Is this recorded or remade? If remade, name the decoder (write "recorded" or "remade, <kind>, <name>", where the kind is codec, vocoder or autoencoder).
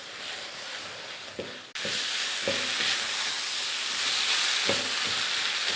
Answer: recorded